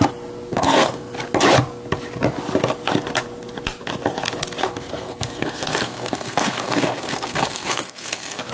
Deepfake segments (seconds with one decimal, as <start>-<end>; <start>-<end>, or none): 0.5-1.1; 4.6-8.5